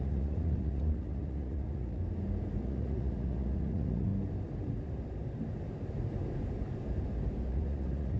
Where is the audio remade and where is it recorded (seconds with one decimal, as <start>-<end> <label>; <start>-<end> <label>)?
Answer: 0.0-2.0 remade; 2.0-2.6 recorded; 2.6-4.1 remade; 4.1-7.5 recorded; 7.5-8.2 remade